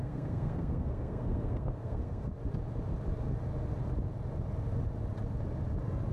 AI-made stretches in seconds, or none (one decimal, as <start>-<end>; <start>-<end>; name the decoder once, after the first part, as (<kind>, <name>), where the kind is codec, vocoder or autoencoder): 0.0-2.3 (codec, SNAC)

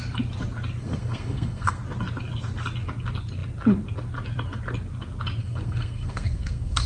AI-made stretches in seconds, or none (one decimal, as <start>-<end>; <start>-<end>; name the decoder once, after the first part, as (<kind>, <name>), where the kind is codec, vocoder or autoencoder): 0.8-1.8 (codec, SNAC); 5.4-6.9

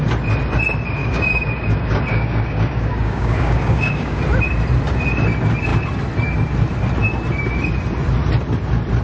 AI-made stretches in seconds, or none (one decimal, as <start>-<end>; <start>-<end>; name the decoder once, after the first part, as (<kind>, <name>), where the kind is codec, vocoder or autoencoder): 1.0-4.2 (codec, DAC)